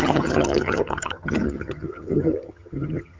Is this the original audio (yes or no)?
no